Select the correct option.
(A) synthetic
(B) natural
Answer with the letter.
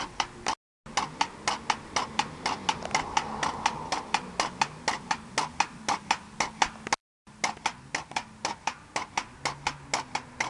B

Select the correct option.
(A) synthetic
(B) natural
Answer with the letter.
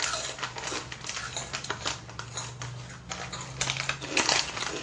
B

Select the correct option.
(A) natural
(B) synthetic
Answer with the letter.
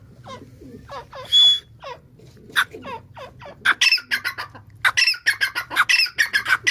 A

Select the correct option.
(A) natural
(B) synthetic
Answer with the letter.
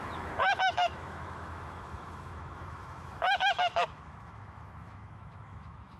B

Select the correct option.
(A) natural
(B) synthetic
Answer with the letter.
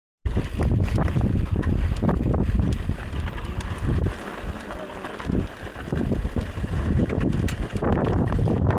A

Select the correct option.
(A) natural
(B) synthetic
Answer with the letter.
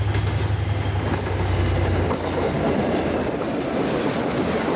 A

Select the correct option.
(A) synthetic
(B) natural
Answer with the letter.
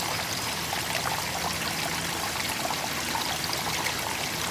B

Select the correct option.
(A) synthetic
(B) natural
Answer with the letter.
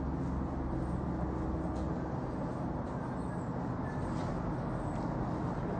B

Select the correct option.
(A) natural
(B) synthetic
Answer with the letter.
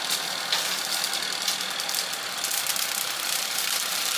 A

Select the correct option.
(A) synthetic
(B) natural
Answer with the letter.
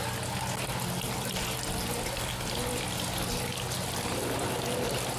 B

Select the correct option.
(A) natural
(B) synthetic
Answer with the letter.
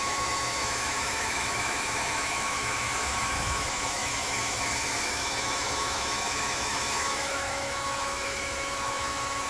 B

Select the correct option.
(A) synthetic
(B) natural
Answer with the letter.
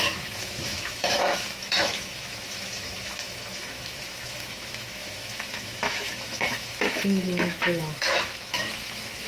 A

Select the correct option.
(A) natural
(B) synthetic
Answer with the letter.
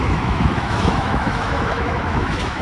B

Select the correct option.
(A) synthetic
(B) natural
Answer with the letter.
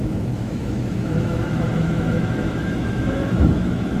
A